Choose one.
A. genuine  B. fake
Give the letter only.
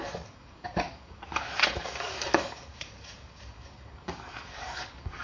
B